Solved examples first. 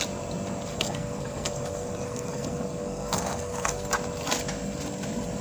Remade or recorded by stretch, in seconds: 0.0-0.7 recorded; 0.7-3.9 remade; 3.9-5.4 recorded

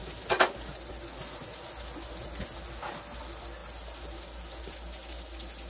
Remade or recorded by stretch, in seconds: 0.0-5.7 recorded

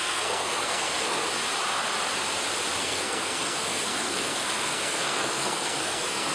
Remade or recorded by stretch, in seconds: 0.0-1.2 remade; 1.2-2.8 recorded; 2.8-6.3 remade